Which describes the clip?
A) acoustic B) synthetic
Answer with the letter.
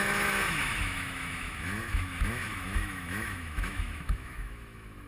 B